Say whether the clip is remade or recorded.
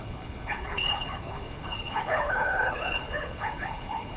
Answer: remade